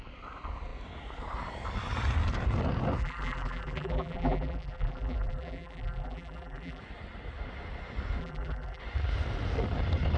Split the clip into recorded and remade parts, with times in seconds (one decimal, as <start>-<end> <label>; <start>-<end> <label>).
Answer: 0.0-3.0 recorded; 3.0-6.8 remade; 6.8-8.2 recorded; 8.2-8.8 remade; 8.8-10.2 recorded